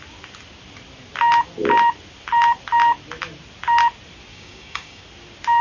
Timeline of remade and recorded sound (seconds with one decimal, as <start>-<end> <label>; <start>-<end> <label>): 0.0-4.3 recorded; 4.3-5.0 remade; 5.0-5.6 recorded